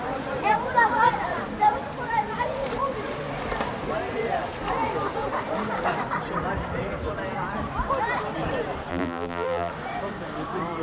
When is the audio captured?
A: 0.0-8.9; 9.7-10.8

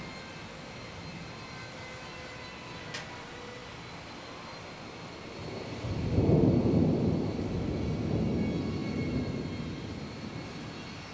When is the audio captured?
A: 0.0-5.4; 7.4-8.8; 10.0-11.1

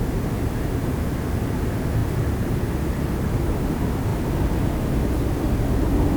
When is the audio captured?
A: 0.0-6.2

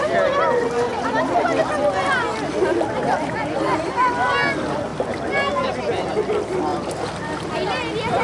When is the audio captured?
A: 0.0-8.2